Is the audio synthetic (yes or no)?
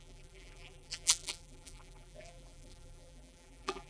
yes